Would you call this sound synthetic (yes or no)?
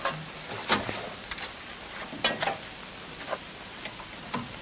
no